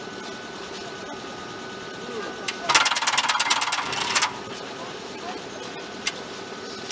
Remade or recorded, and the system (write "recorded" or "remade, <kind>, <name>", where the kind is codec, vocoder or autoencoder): recorded